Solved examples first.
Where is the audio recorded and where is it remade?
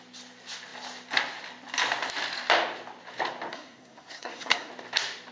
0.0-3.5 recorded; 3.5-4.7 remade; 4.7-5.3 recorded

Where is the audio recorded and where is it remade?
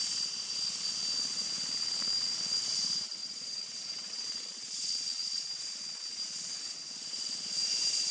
0.0-3.2 recorded; 3.2-5.5 remade; 5.5-8.1 recorded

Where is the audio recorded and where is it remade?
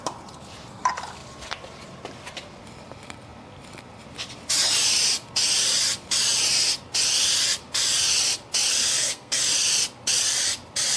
0.0-8.7 recorded; 8.7-9.4 remade; 9.4-11.0 recorded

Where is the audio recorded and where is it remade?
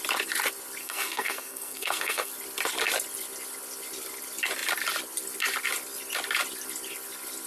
0.0-0.8 recorded; 0.8-2.3 remade; 2.3-7.5 recorded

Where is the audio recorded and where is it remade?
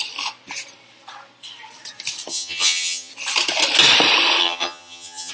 0.0-2.3 recorded; 2.3-3.1 remade; 3.1-4.4 recorded; 4.4-5.3 remade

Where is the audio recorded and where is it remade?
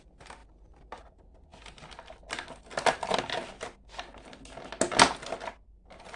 0.0-6.2 recorded